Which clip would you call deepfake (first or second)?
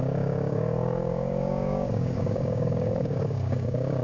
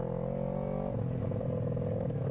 first